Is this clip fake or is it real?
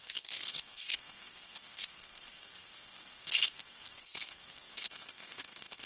fake